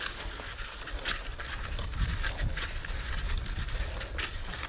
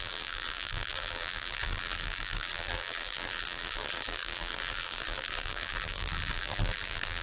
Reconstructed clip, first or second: second